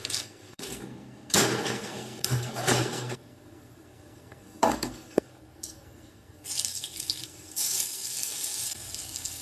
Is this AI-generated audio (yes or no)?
yes